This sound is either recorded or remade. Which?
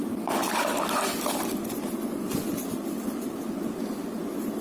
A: recorded